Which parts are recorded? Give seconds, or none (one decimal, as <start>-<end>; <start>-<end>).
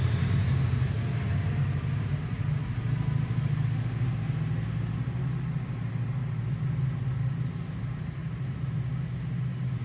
2.6-7.1; 8.2-9.8